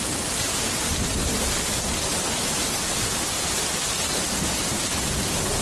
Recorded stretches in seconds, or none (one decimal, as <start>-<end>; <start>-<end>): 0.0-5.6